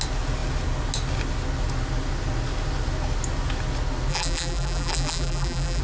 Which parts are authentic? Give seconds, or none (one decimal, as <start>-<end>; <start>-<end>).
0.0-4.1